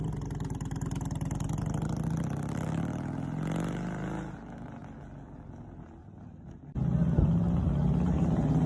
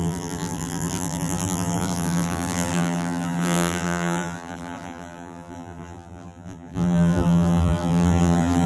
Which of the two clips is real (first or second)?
first